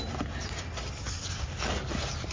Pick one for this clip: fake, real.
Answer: real